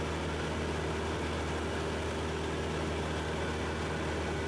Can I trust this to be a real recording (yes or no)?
yes